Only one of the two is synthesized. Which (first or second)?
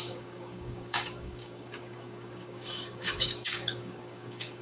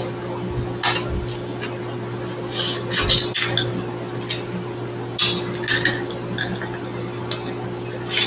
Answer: first